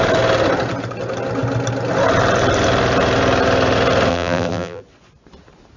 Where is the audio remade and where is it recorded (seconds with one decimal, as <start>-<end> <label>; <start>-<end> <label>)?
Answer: 0.0-4.1 recorded; 4.1-4.8 remade; 4.8-5.8 recorded

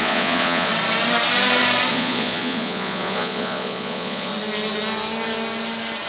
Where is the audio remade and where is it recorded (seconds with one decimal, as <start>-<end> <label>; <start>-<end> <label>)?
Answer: 0.0-0.7 remade; 0.7-1.9 recorded; 1.9-4.3 remade; 4.3-6.1 recorded

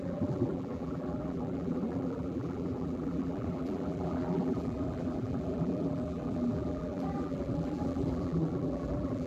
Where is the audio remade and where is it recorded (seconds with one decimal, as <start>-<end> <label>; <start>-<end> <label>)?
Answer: 0.0-9.3 remade

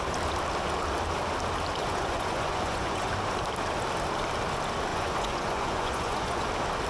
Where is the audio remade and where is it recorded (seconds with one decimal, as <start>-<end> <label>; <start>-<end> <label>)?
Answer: 0.0-1.8 recorded; 1.8-3.1 remade; 3.1-4.9 recorded; 4.9-6.5 remade; 6.5-6.9 recorded

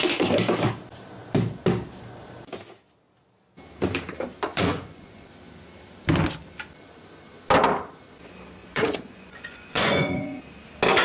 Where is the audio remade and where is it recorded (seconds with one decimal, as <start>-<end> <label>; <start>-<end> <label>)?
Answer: 0.0-4.5 recorded; 4.5-5.3 remade; 5.3-8.6 recorded; 8.6-10.4 remade; 10.4-11.0 recorded

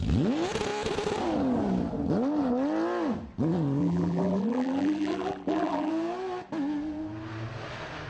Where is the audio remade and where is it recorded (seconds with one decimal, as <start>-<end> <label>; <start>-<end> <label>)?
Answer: 0.0-3.8 recorded; 3.8-5.9 remade; 5.9-8.1 recorded

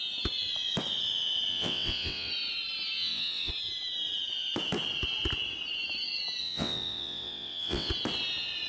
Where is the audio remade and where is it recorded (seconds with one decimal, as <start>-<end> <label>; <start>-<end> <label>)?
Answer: 0.0-1.5 recorded; 1.5-2.3 remade; 2.3-3.0 recorded; 3.0-3.5 remade; 3.5-6.4 recorded; 6.4-7.9 remade; 7.9-8.7 recorded

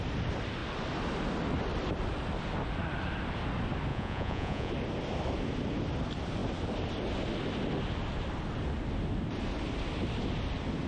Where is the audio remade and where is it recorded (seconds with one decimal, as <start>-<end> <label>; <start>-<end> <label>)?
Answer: 0.0-3.9 recorded; 3.9-4.7 remade; 4.7-10.9 recorded